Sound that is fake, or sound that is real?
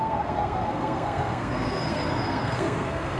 fake